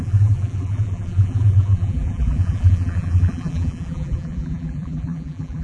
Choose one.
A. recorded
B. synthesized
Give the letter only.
B